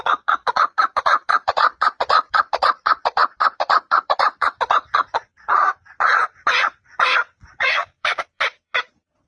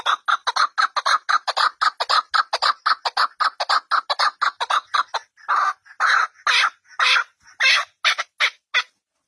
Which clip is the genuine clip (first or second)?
second